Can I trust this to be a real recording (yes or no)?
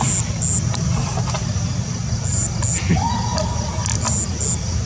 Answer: yes